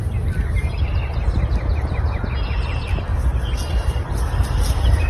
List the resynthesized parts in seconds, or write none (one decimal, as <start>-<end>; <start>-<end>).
none

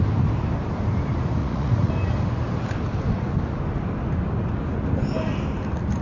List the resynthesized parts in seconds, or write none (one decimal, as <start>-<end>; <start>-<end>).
1.4-1.9

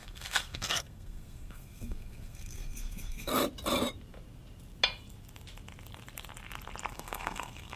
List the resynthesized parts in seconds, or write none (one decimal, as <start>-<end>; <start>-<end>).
0.0-3.3; 6.9-7.8

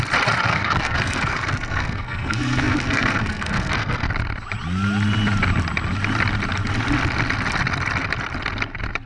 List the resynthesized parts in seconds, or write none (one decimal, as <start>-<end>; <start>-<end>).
0.5-4.1